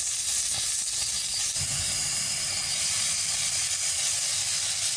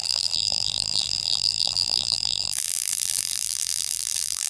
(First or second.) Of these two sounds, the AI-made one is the second